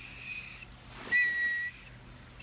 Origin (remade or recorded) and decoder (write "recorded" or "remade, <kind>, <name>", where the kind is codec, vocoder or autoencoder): recorded